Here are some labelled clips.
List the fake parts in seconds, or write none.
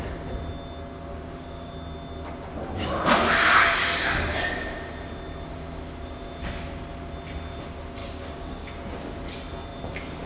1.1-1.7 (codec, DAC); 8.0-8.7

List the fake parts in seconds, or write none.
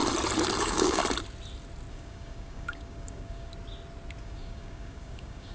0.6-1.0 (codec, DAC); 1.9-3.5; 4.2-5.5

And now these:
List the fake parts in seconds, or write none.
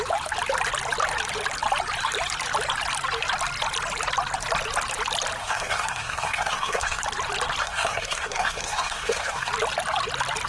5.4-7.0 (codec, SNAC); 7.6-9.5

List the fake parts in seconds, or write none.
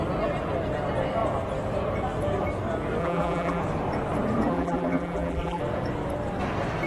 3.0-3.6 (vocoder, BigVGAN v2); 4.5-5.6